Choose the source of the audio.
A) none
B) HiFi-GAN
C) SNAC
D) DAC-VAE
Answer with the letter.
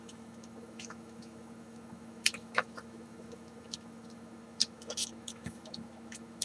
D